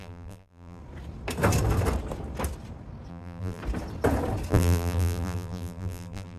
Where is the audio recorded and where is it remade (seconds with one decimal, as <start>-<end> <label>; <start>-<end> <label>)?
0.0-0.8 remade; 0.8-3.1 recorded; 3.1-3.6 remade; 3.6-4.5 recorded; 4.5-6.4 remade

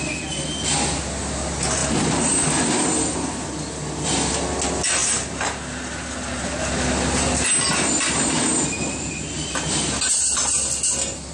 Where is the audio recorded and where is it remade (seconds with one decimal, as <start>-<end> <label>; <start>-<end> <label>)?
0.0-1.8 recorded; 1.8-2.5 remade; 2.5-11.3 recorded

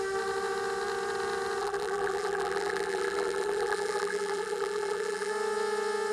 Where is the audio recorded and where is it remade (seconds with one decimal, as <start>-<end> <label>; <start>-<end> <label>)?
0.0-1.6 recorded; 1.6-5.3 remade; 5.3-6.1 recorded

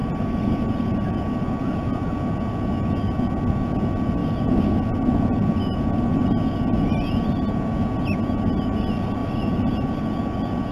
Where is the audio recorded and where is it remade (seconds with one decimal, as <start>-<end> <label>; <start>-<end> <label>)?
0.0-1.3 remade; 1.3-4.2 recorded; 4.2-6.2 remade; 6.2-9.2 recorded; 9.2-9.7 remade; 9.7-10.7 recorded

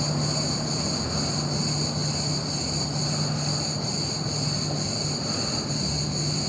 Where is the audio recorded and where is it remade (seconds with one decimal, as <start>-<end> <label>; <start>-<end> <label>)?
0.0-2.0 recorded; 2.0-5.9 remade; 5.9-6.5 recorded